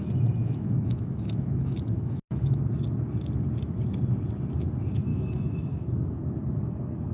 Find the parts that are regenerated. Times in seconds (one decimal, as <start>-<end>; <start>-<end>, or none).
0.4-2.6; 5.1-6.1